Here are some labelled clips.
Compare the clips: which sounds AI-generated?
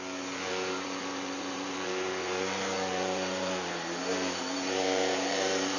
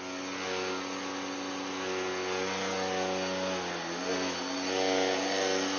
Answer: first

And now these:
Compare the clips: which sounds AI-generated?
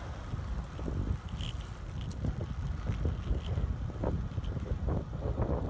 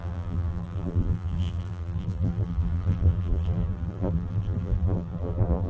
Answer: second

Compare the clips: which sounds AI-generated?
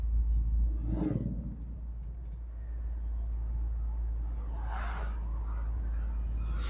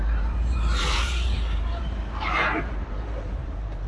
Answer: second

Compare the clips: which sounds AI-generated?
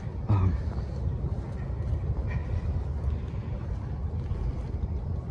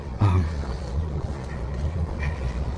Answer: second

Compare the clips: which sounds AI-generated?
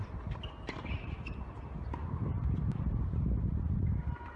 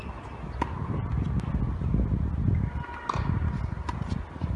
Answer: first